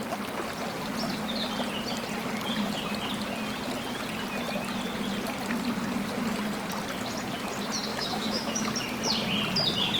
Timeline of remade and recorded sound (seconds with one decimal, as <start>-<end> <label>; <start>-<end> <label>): 0.0-7.9 recorded; 7.9-8.7 remade; 8.7-10.0 recorded